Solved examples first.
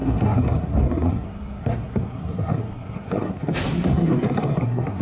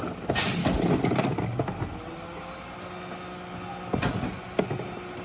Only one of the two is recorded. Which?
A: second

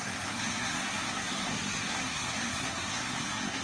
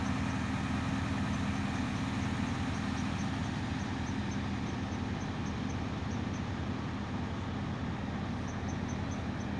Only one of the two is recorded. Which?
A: second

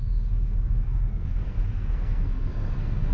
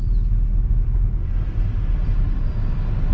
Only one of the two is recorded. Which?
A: second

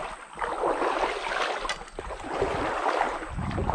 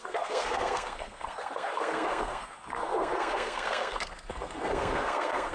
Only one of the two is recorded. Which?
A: first